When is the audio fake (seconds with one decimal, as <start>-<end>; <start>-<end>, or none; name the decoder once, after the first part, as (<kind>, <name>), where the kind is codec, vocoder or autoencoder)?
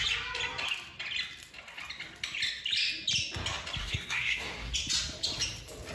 3.8-4.7 (codec, SNAC)